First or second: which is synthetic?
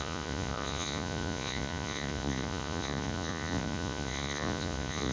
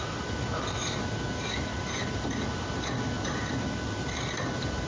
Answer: first